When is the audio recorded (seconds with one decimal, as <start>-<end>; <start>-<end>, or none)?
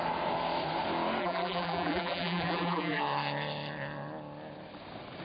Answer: 0.0-1.2; 3.0-5.2